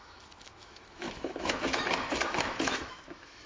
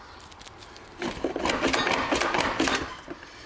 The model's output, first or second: first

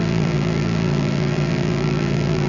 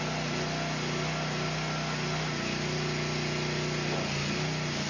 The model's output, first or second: first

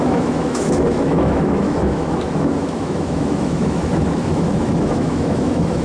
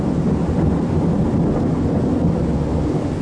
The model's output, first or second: first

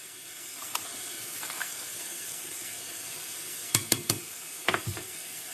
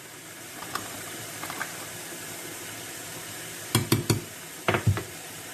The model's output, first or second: first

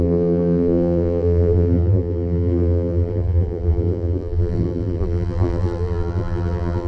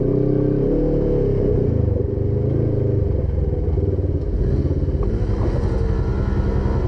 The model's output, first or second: first